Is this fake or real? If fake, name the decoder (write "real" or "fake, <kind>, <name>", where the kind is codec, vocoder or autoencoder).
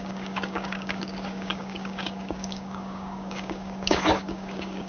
fake, codec, DAC